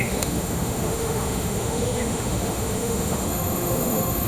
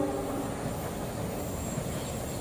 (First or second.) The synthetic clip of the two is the first